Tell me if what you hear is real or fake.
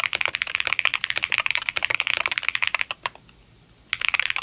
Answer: real